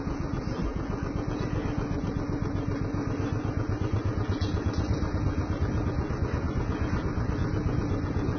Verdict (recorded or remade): recorded